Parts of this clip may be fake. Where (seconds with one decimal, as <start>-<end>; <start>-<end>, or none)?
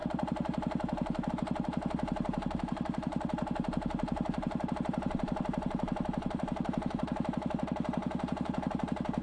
8.0-8.7